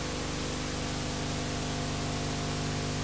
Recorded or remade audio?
recorded